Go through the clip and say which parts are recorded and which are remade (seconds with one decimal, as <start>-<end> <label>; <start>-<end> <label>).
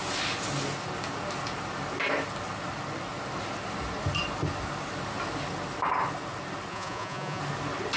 0.0-6.7 recorded; 6.7-7.4 remade; 7.4-8.0 recorded